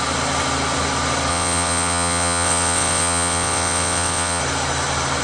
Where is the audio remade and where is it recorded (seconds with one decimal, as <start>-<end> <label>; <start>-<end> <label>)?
0.0-1.3 recorded; 1.3-4.4 remade; 4.4-5.2 recorded